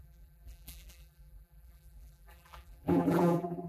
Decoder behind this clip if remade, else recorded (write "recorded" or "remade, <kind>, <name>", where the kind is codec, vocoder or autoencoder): remade, vocoder, BigVGAN v2